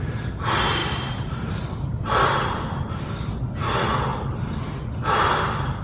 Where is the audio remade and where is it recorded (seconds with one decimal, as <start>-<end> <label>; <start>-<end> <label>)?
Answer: 0.0-0.8 recorded; 0.8-1.5 remade; 1.5-5.8 recorded